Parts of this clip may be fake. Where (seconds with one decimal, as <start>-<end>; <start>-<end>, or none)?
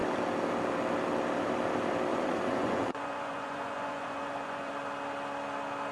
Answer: 2.1-4.7